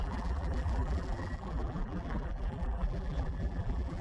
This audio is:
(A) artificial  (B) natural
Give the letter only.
A